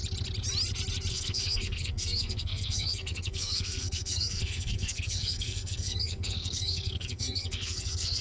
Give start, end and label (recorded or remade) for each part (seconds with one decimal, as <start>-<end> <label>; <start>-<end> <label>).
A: 0.0-1.1 recorded; 1.1-8.2 remade